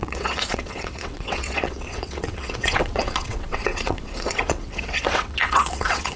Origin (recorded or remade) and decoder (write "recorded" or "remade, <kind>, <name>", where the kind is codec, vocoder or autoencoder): remade, vocoder, WaveNeXt